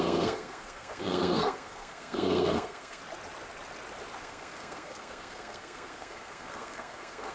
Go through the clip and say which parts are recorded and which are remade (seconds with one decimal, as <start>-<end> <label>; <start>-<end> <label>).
0.0-3.0 remade; 3.0-4.2 recorded; 4.2-7.3 remade